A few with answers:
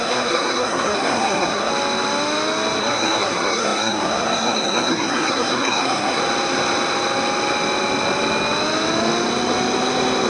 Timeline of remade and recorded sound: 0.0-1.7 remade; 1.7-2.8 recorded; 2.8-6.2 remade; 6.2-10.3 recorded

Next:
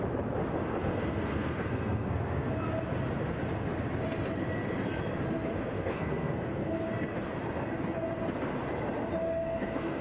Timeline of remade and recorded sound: 0.0-0.5 recorded; 0.5-2.5 remade; 2.5-5.5 recorded; 5.5-6.9 remade; 6.9-9.2 recorded; 9.2-10.0 remade

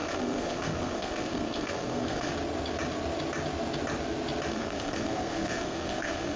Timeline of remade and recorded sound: 0.0-2.3 remade; 2.3-4.5 recorded; 4.5-6.4 remade

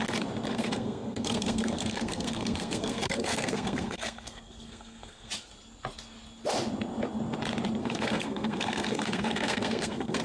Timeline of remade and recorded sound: 0.0-0.5 recorded; 0.5-5.3 remade; 5.3-7.8 recorded; 7.8-10.2 remade

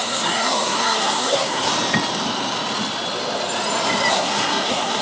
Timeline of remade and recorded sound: 0.0-1.7 remade; 1.7-4.1 recorded; 4.1-5.0 remade

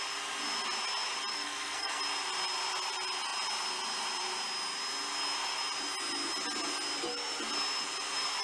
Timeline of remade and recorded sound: 0.0-1.3 recorded; 1.3-2.0 remade; 2.0-8.4 recorded

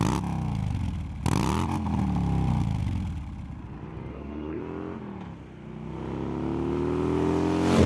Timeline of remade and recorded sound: 0.0-4.1 recorded; 4.1-4.6 remade; 4.6-7.9 recorded